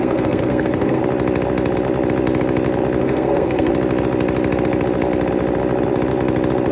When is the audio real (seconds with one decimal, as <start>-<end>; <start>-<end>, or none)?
1.0-3.0; 3.7-6.7